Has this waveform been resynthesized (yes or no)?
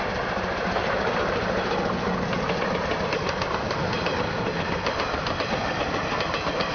no